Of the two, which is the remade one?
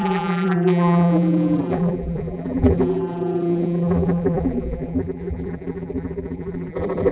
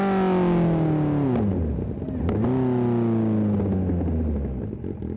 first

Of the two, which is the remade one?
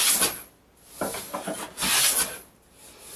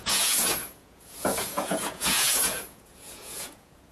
second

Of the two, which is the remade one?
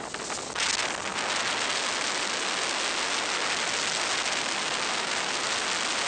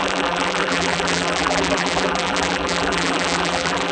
second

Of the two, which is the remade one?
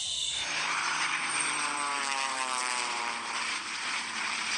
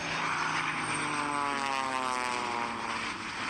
first